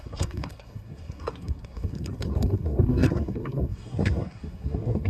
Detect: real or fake fake